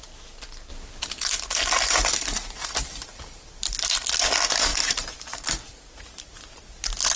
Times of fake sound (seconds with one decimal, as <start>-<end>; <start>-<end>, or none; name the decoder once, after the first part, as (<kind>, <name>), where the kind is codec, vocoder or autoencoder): 2.0-4.0 (vocoder, BigVGAN v2); 4.7-6.6

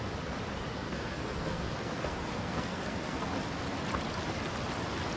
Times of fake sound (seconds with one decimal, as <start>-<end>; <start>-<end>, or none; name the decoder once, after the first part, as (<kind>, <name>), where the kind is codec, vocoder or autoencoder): 0.7-3.3 (codec, SNAC)